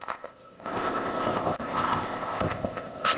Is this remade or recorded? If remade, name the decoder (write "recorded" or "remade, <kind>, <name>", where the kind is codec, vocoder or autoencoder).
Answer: remade, codec, ZipCodec